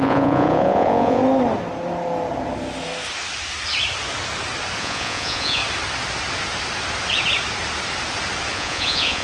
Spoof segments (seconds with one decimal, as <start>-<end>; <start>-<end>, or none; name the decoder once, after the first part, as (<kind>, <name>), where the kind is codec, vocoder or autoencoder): 0.0-1.2 (vocoder, Vocos); 4.8-5.6; 8.5-9.2